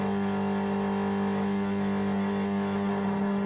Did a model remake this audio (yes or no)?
no